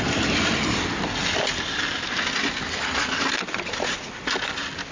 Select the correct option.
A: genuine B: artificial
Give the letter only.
A